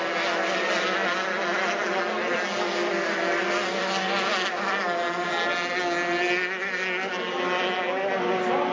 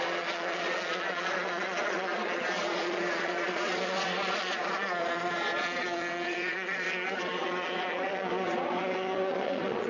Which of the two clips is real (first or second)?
first